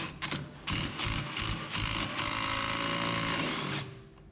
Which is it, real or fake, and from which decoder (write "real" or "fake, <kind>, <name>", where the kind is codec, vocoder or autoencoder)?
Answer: real